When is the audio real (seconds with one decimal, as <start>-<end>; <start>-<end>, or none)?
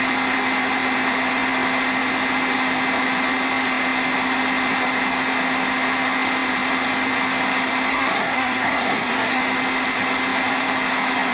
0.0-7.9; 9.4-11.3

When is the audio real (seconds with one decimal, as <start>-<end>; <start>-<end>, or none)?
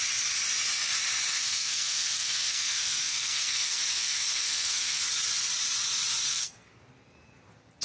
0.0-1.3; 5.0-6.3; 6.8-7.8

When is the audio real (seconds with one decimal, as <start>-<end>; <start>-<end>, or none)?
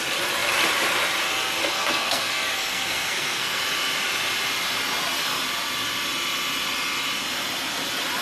0.0-1.6; 3.6-8.2